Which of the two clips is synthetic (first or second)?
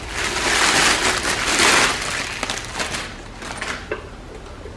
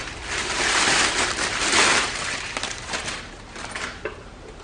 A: second